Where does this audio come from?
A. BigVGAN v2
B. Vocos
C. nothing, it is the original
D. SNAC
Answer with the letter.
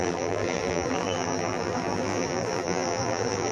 A